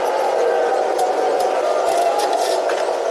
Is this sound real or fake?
fake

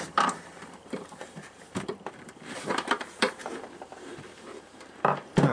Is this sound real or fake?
fake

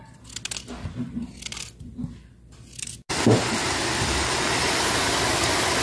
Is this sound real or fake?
real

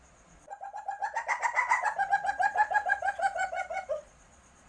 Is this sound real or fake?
fake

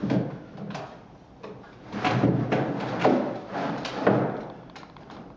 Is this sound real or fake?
real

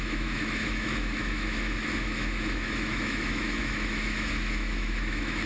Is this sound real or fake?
fake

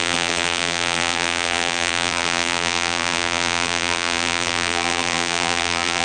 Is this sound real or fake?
fake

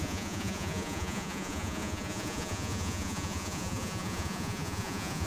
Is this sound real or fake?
fake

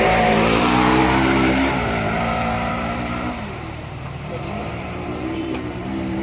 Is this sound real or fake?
fake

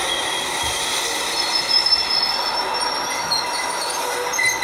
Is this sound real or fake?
real